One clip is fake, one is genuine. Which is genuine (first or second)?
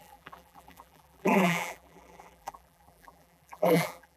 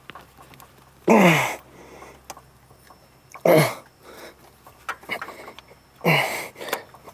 second